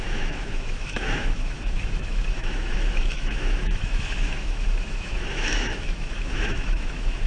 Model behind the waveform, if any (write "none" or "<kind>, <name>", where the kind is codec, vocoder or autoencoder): autoencoder, DAC-VAE